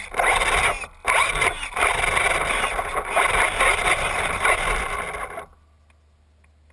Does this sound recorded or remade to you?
recorded